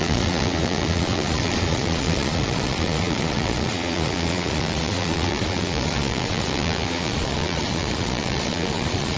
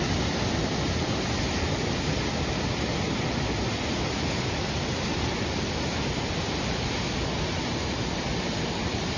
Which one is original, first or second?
second